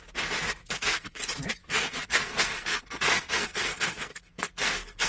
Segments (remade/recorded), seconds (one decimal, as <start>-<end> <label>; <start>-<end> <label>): 0.0-0.6 recorded; 0.6-1.2 remade; 1.2-1.6 recorded; 1.6-5.1 remade